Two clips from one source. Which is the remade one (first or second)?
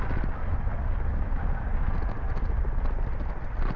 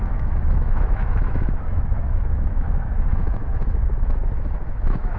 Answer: second